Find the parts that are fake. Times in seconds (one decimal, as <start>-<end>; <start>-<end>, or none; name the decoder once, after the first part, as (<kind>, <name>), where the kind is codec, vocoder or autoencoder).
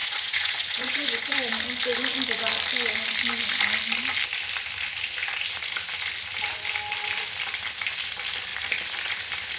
0.0-1.5 (vocoder, Vocos)